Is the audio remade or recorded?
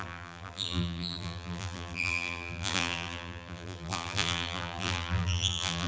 remade